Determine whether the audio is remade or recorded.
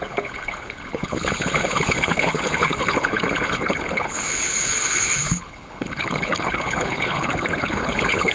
remade